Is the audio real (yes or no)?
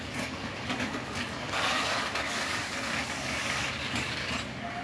no